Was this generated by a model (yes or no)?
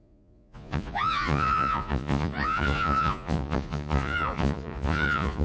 yes